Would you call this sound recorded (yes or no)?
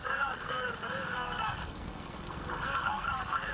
no